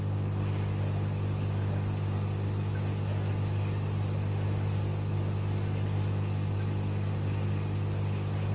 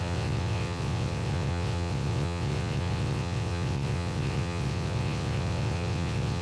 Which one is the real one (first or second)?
first